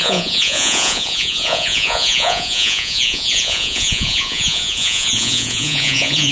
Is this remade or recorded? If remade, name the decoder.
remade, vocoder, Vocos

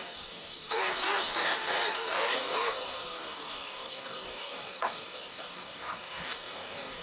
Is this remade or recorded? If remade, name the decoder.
remade, codec, DAC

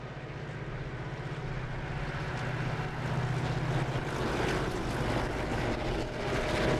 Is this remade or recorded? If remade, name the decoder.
recorded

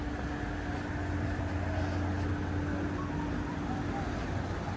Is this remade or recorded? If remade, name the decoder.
recorded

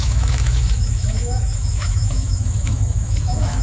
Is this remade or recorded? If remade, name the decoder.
remade, autoencoder, DAC-VAE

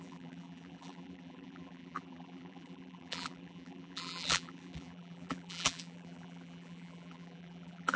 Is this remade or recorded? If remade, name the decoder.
remade, vocoder, BigVGAN v2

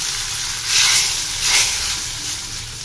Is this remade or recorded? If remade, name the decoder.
recorded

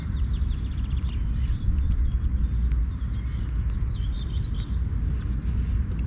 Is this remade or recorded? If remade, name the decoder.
recorded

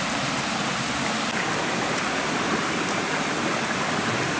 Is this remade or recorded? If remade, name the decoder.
recorded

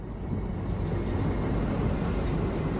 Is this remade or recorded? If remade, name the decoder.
recorded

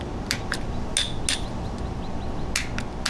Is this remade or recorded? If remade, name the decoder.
recorded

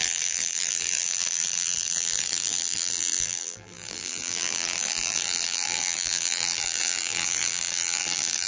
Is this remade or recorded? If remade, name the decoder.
remade, vocoder, BigVGAN v2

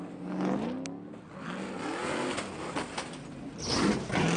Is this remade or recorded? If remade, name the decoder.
recorded